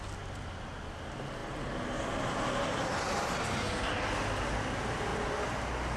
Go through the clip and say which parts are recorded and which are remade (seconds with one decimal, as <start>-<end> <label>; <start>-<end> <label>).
0.0-6.0 recorded